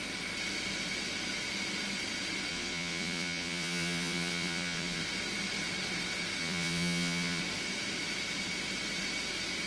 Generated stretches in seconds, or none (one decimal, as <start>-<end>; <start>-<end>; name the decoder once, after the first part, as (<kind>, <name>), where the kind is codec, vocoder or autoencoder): 2.5-5.0 (vocoder, Vocos); 6.4-7.4